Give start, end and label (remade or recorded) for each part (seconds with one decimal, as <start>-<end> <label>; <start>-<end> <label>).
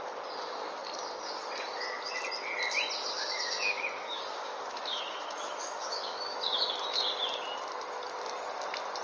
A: 0.0-3.0 recorded; 3.0-6.7 remade; 6.7-9.0 recorded